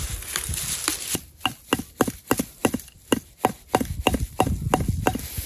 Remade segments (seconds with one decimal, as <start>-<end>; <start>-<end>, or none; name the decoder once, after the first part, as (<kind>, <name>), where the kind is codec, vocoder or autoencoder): none